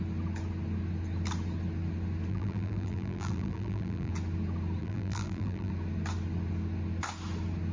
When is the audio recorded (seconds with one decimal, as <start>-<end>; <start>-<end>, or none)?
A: 0.0-2.3; 4.1-4.8; 5.7-7.7